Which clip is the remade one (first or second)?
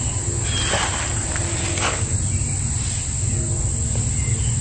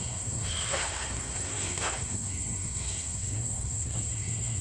second